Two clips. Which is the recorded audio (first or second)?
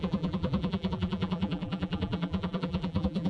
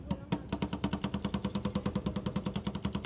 second